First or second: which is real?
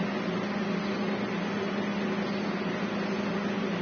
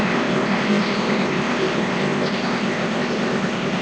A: first